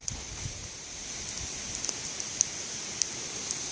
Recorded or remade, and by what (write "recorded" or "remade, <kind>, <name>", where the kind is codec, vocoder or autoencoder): recorded